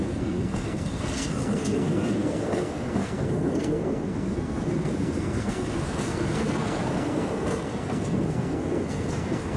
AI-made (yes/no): yes